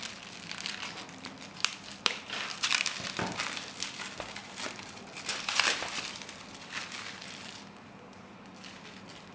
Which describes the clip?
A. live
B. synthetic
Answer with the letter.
A